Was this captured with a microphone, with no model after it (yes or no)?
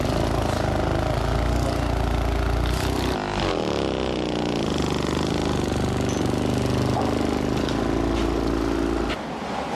yes